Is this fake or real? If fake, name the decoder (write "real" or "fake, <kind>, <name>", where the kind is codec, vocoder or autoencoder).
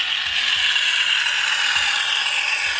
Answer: real